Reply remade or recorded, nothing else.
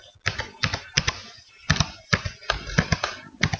recorded